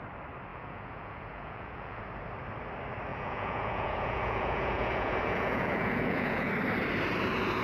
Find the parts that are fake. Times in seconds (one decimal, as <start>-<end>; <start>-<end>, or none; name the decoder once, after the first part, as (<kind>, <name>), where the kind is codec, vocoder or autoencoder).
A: 0.5-2.0 (vocoder, Vocos); 3.1-6.5